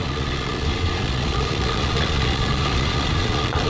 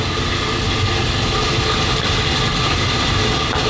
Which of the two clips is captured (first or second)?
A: second